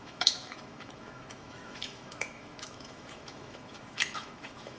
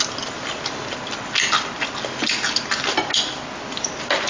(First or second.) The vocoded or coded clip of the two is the first